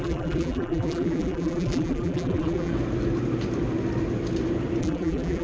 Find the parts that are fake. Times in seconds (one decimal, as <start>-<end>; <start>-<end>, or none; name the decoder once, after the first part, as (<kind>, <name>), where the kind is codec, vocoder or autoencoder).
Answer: 0.0-2.7 (vocoder, BigVGAN v2); 4.8-5.4